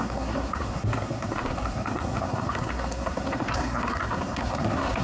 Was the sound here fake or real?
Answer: fake